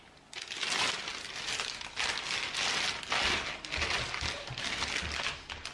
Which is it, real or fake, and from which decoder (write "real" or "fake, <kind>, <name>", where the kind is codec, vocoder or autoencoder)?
real